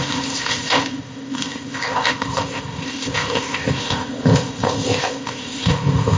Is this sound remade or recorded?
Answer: remade